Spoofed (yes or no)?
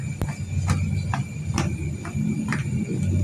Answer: no